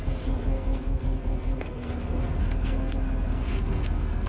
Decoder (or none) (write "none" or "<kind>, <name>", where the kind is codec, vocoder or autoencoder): codec, SNAC